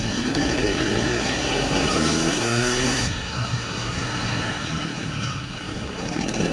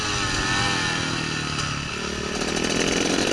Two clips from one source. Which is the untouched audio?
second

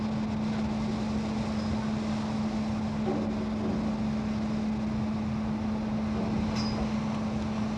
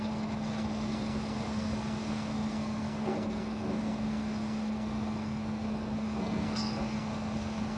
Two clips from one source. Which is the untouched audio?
first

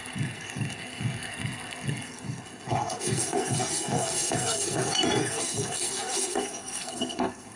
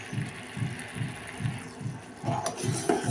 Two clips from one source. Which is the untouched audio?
second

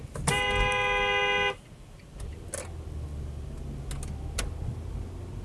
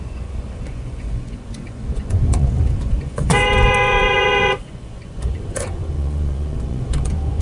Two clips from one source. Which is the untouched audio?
first